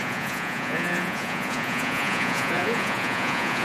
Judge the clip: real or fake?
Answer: fake